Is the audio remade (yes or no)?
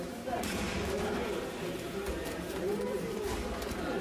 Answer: yes